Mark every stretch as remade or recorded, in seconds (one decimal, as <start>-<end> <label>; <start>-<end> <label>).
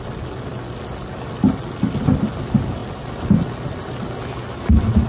0.0-5.1 recorded